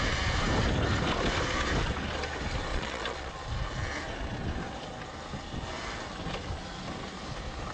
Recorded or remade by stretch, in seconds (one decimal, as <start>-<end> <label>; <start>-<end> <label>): 0.0-2.7 recorded; 2.7-3.3 remade; 3.3-7.7 recorded

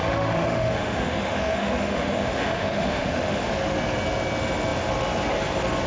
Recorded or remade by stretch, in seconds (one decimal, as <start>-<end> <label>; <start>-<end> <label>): 0.0-3.5 remade; 3.5-5.9 recorded

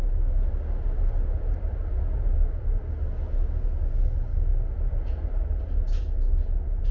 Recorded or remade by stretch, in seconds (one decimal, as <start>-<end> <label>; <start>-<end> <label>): 0.0-6.9 recorded

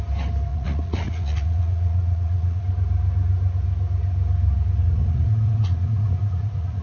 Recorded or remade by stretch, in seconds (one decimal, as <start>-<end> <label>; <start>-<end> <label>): 0.0-0.5 recorded; 0.5-2.6 remade; 2.6-4.8 recorded; 4.8-6.8 remade